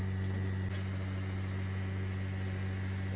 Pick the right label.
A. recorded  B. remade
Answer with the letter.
A